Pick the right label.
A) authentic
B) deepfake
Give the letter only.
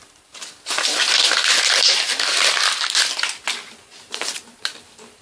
A